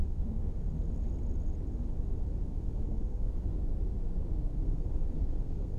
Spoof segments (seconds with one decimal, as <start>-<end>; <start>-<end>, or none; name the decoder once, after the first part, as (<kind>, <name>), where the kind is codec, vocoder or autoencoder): 0.0-0.7 (codec, SNAC); 2.5-3.6; 4.5-5.8